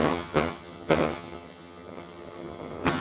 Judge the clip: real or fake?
fake